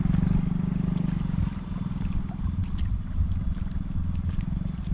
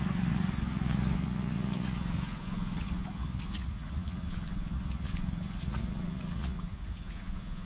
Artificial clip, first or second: second